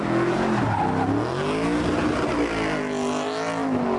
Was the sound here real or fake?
real